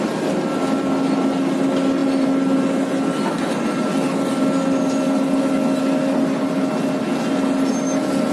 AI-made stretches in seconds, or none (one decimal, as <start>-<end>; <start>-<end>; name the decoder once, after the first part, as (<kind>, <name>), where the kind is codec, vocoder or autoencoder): none